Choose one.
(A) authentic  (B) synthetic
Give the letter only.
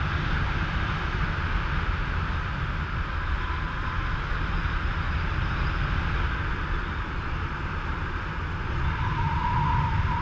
A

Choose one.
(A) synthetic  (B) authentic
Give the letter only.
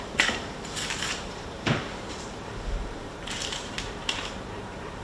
A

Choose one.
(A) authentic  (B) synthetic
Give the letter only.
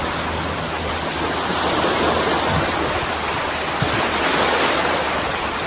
A